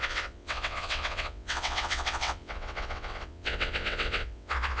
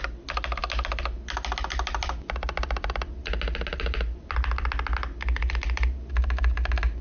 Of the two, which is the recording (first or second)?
second